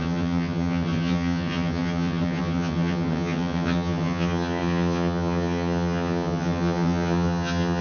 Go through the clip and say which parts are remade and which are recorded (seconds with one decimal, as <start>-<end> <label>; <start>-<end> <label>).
0.0-7.8 remade

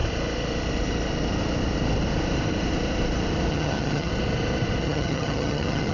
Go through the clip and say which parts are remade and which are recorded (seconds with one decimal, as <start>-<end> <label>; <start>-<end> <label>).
0.0-3.5 recorded; 3.5-4.1 remade; 4.1-4.8 recorded; 4.8-5.9 remade